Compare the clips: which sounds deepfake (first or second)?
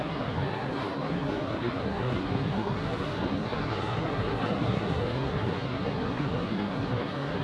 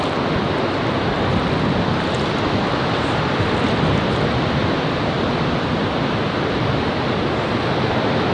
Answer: first